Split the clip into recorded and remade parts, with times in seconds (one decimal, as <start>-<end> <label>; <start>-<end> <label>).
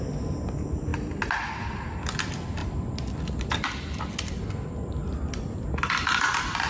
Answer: 0.0-2.6 recorded; 2.6-4.4 remade; 4.4-5.0 recorded; 5.0-5.8 remade; 5.8-6.7 recorded